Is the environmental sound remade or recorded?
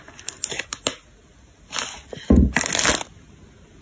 recorded